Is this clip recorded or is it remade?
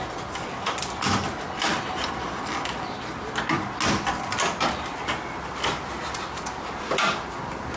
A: recorded